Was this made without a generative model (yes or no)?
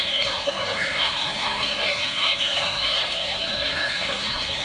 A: no